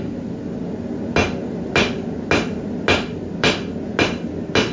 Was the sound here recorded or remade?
recorded